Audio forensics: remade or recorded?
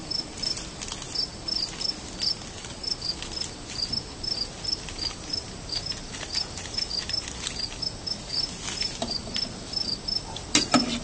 recorded